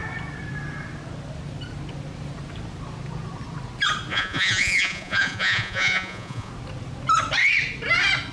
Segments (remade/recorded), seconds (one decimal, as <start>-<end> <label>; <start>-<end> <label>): 0.0-4.1 recorded; 4.1-6.5 remade; 6.5-8.3 recorded